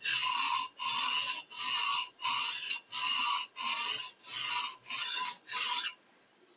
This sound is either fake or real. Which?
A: real